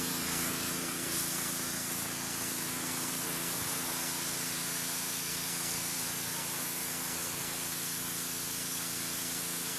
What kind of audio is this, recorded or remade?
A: remade